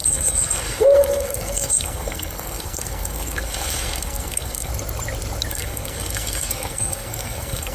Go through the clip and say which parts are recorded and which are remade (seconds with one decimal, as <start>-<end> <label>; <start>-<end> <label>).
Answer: 0.0-4.7 remade; 4.7-5.5 recorded; 5.5-7.7 remade